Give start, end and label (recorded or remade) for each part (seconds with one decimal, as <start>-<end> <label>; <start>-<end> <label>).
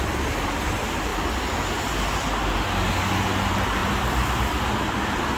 0.0-5.4 recorded